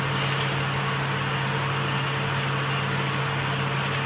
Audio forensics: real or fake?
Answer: real